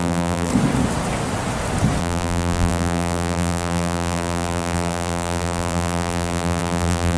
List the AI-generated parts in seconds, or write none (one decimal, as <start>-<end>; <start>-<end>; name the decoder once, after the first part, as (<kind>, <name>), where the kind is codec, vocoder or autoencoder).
0.0-0.5 (vocoder, BigVGAN v2); 2.0-7.2